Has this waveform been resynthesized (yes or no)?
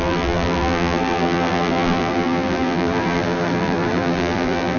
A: yes